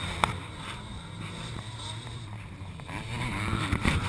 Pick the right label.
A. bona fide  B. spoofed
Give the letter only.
B